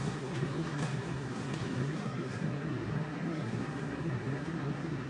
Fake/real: fake